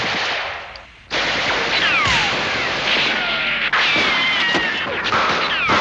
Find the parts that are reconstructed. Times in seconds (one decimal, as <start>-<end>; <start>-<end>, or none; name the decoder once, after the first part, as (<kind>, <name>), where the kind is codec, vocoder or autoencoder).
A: 2.2-2.7 (vocoder, BigVGAN v2)